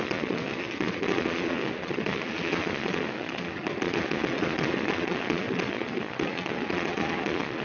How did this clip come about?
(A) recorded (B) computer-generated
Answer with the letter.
B